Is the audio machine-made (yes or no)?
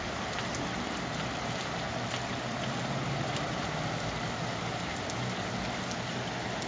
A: no